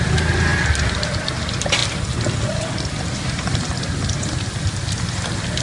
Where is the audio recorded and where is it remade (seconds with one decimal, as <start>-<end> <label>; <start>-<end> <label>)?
0.0-5.6 recorded